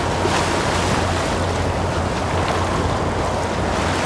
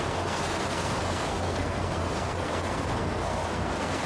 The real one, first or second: first